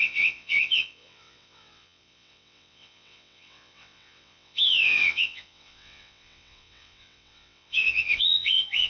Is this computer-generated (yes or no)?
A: yes